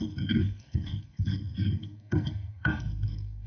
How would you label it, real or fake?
fake